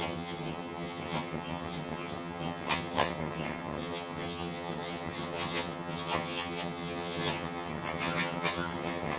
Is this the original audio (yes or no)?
no